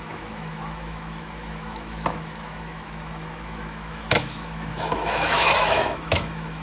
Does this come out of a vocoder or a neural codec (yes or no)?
yes